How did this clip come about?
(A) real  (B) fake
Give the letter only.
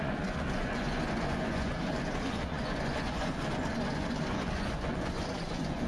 B